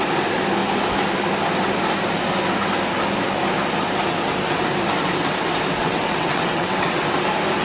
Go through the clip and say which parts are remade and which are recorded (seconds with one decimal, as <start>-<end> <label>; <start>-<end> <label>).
0.0-5.8 recorded; 5.8-7.0 remade; 7.0-7.6 recorded